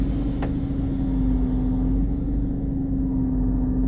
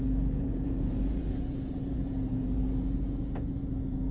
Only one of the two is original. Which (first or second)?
first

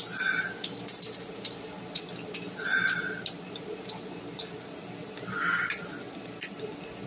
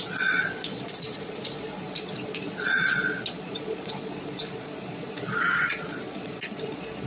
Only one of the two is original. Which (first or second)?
first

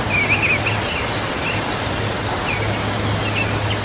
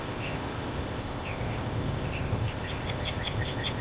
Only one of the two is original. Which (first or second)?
first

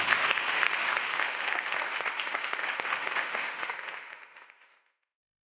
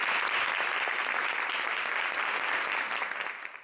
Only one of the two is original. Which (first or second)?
second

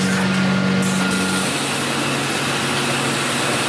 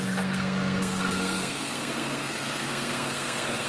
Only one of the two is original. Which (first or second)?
first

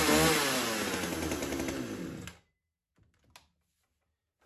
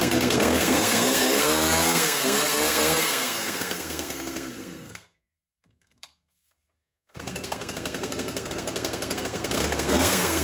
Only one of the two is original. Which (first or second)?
first